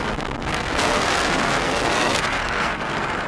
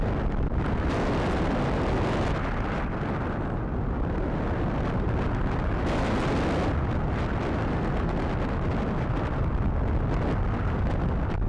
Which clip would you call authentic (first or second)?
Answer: second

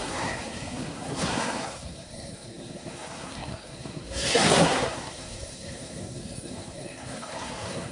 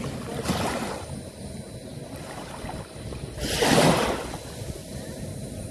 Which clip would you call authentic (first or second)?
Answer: second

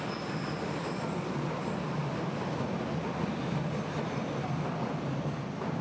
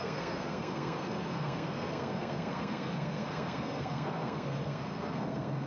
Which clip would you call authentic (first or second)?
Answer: first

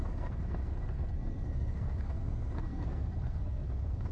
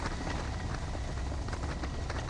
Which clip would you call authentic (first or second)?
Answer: second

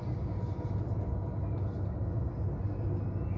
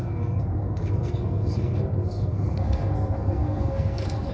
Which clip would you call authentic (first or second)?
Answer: first